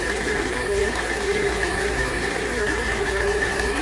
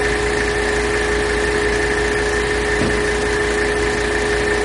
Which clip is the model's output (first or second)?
first